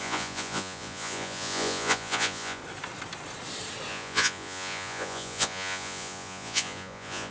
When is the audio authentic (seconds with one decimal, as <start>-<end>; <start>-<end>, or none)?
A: 2.6-3.9